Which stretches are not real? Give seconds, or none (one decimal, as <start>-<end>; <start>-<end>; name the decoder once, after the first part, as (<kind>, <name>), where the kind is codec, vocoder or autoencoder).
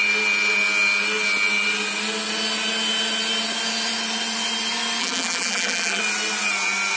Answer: 5.0-6.0 (vocoder, BigVGAN v2)